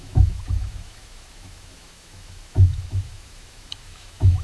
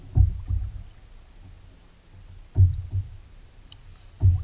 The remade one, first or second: first